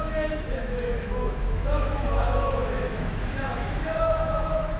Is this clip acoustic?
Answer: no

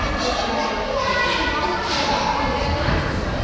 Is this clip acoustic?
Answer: yes